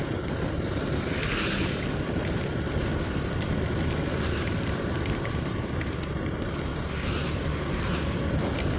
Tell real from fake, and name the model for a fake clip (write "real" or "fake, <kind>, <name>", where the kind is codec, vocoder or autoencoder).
real